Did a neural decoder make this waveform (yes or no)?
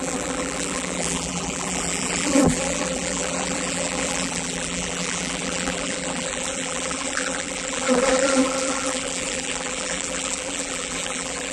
yes